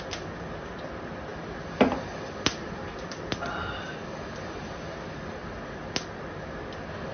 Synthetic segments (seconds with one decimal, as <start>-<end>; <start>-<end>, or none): none